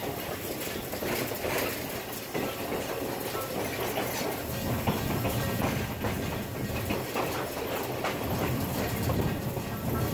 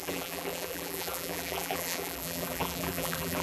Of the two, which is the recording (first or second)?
first